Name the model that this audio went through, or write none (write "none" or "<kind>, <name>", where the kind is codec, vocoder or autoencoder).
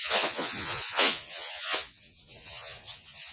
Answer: vocoder, Vocos